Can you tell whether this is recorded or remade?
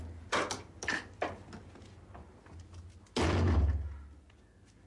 recorded